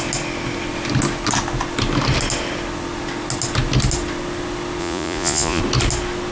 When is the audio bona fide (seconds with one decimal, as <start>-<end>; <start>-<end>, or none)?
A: 0.0-4.8; 5.6-6.3